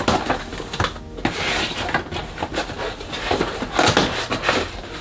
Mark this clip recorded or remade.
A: recorded